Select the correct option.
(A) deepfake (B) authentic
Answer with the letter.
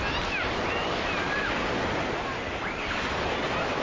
B